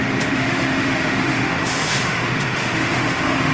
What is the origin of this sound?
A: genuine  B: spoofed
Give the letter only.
B